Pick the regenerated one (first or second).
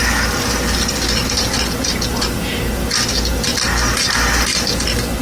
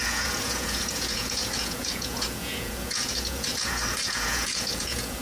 second